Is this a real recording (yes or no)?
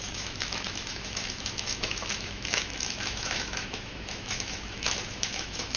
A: no